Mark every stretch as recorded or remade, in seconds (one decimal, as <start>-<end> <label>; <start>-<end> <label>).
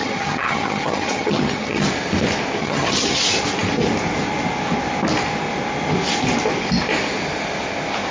0.0-1.9 remade; 1.9-2.6 recorded; 2.6-3.2 remade; 3.2-8.1 recorded